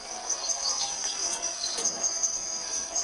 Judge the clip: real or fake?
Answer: fake